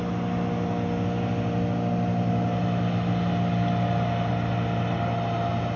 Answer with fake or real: real